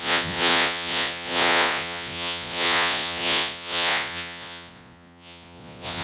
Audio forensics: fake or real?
fake